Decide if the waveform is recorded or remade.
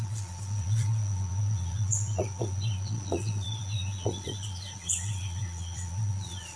remade